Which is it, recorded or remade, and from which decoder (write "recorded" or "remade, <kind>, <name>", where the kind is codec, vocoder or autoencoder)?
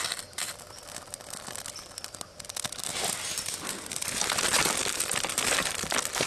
recorded